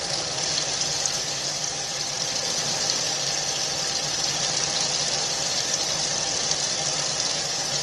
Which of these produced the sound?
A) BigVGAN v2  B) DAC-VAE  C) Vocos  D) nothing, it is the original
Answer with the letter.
D